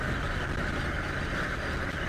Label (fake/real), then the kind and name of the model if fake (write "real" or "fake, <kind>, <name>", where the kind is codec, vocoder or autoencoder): real